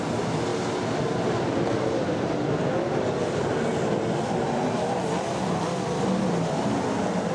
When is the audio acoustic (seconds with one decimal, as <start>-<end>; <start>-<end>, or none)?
0.0-7.3